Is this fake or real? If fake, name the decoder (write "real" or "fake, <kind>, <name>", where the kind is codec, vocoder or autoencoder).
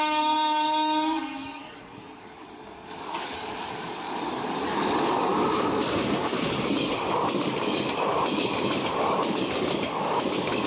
fake, codec, DAC